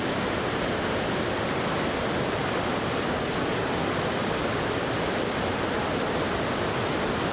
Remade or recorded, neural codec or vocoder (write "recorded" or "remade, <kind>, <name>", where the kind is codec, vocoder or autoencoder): recorded